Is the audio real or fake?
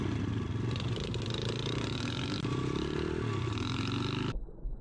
real